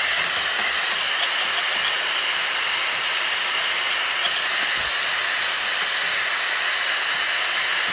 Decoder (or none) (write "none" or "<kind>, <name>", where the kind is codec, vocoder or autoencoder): none